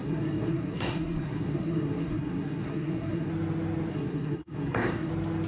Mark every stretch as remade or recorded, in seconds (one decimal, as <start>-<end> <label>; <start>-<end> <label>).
0.0-3.3 remade; 3.3-3.9 recorded; 3.9-5.1 remade; 5.1-5.5 recorded